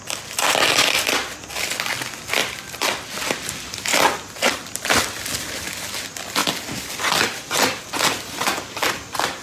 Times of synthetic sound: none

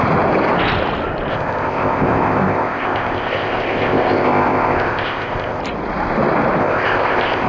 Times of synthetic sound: 1.3-5.6 (codec, ZipCodec); 6.6-7.5

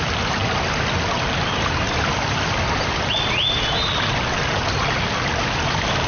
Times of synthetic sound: none

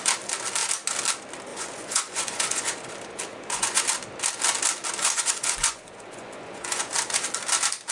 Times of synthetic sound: 1.5-2.9 (vocoder, Vocos); 3.3-3.8; 5.0-6.9

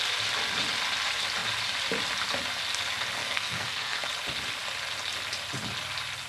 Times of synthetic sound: 3.2-4.1 (codec, SNAC)

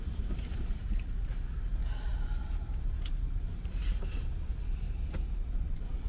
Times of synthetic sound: 0.0-1.8 (vocoder, BigVGAN v2); 2.8-3.8; 5.6-6.1